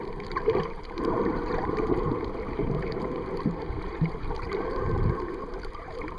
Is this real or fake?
fake